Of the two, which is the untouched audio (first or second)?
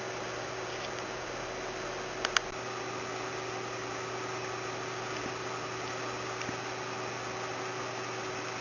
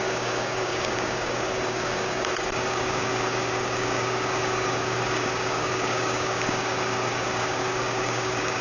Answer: first